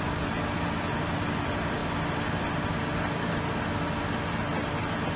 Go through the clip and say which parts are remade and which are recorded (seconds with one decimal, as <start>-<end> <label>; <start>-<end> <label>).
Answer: 0.0-5.2 recorded